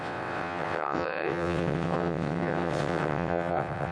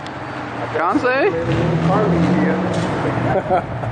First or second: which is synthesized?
first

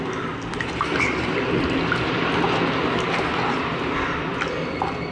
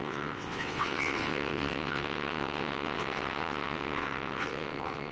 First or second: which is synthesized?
second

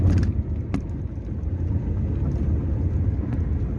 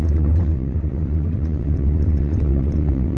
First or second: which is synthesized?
second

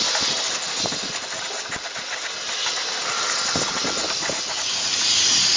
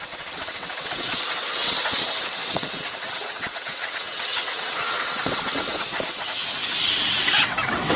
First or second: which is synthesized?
second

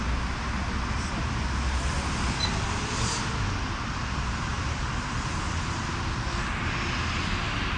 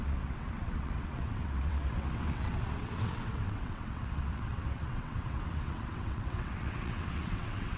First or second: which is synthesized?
second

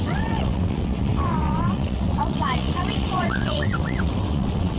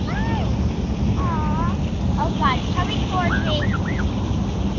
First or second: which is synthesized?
first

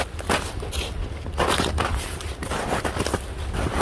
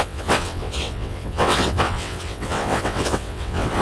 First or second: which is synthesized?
second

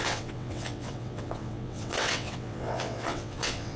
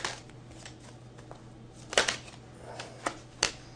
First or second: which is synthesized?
first